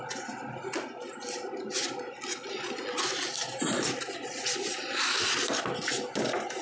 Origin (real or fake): real